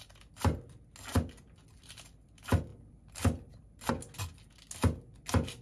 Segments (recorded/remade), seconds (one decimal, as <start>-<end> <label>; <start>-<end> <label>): 0.0-5.6 recorded